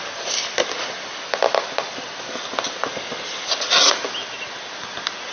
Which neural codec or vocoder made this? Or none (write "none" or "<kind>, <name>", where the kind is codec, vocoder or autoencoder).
none